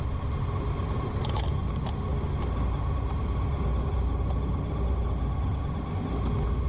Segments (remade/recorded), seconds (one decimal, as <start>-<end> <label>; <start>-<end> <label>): 0.0-6.7 recorded